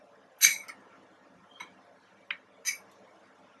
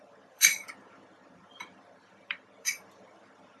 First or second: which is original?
first